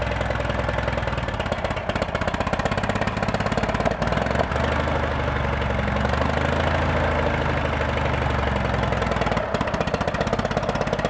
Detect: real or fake real